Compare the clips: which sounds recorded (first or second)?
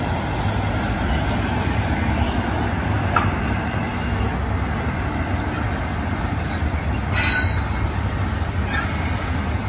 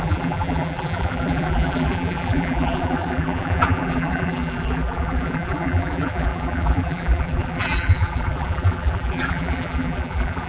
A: first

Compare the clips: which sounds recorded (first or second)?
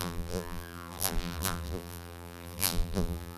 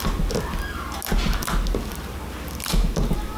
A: second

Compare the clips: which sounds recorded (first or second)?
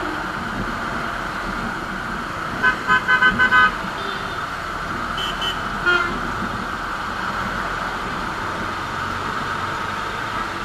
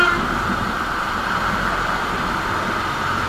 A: first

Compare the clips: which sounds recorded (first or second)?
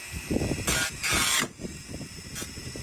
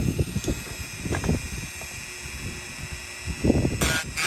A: second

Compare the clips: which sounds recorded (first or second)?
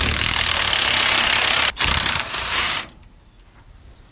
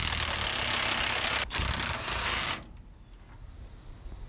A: second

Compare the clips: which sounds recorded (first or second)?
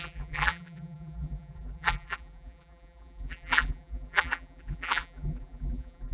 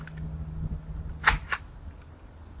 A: second